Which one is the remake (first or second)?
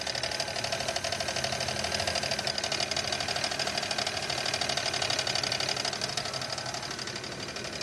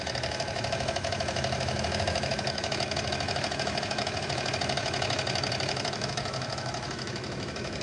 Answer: second